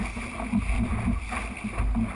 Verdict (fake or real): real